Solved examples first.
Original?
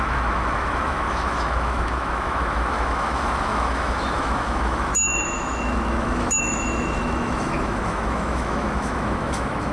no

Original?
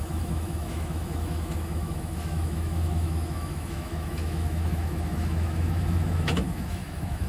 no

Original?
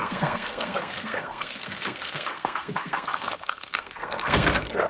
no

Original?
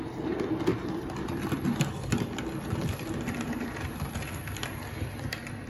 yes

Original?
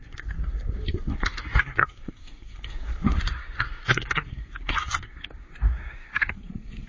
no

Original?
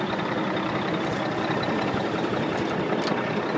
yes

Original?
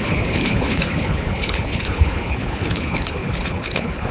no